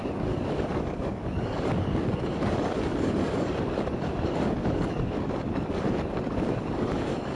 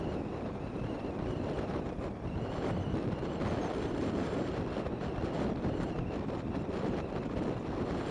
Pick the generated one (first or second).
first